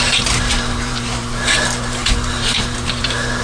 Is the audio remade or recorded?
remade